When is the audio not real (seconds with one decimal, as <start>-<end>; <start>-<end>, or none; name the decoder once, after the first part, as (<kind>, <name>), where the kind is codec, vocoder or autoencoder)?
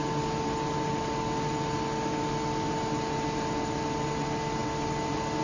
none